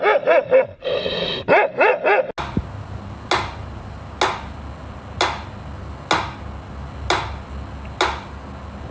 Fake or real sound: real